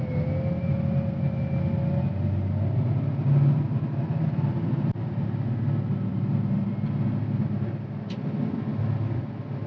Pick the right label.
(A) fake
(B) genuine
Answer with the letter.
B